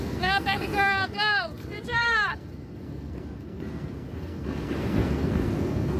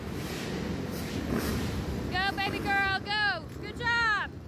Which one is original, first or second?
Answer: second